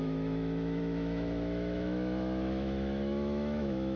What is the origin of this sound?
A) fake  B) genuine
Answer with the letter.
A